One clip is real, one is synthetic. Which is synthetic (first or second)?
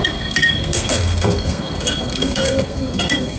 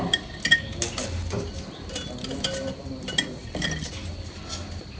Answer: first